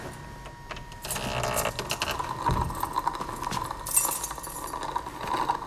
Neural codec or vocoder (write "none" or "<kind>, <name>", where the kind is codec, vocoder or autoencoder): none